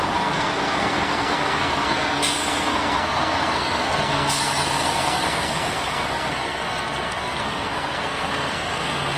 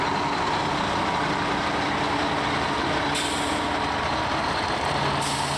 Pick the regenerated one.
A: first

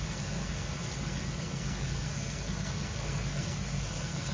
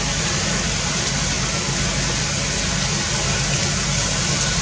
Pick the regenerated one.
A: first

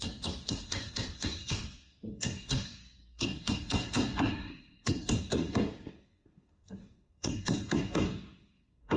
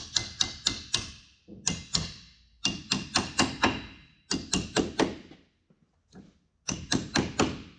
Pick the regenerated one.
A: first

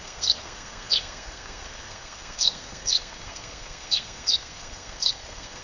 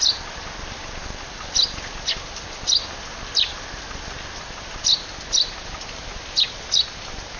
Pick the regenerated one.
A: first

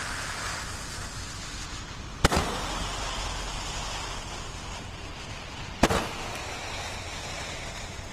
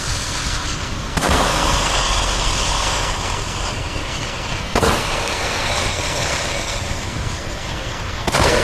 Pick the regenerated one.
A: second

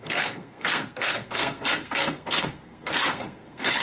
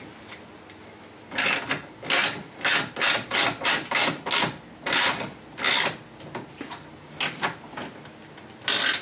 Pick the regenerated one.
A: first